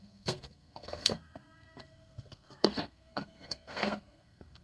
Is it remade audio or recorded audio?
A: remade